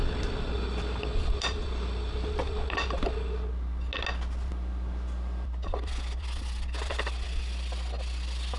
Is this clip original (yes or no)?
yes